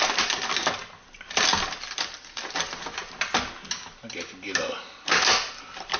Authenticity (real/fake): real